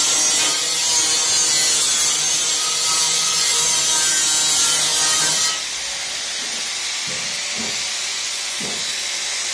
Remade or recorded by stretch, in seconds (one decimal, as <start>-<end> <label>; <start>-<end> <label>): 0.0-3.1 recorded; 3.1-3.8 remade; 3.8-8.1 recorded; 8.1-8.9 remade; 8.9-9.5 recorded